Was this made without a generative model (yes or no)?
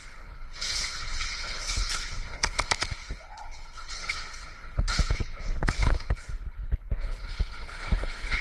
no